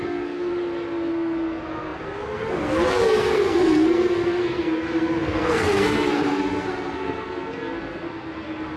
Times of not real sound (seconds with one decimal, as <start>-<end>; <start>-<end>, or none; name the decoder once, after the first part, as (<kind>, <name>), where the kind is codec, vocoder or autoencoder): 0.0-0.5 (codec, SNAC); 1.1-8.8